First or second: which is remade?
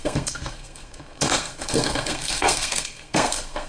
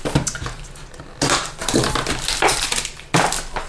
first